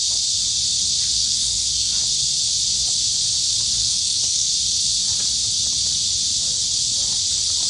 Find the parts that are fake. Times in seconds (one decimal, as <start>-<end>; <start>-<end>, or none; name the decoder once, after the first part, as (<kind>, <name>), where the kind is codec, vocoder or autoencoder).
1.2-2.0 (codec, SNAC); 3.8-4.5

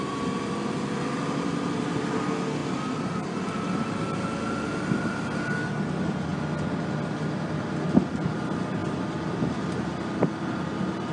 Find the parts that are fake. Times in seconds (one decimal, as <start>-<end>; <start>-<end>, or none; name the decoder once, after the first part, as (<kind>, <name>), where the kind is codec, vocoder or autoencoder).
none

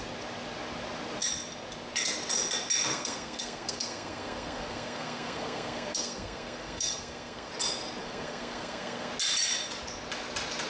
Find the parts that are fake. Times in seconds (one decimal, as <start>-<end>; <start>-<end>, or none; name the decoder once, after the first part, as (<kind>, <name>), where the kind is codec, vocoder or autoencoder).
2.9-7.5 (codec, SNAC); 8.0-9.1

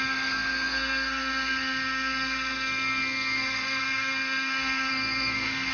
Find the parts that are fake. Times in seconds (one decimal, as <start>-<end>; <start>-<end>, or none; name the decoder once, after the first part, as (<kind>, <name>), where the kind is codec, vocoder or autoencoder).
0.0-5.7 (codec, SNAC)

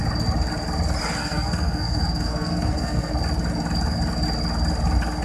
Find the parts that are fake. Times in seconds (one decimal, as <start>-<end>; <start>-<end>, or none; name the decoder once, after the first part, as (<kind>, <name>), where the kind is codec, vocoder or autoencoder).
1.2-3.1 (codec, SNAC)